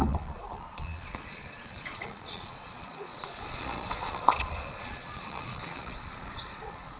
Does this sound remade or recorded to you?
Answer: remade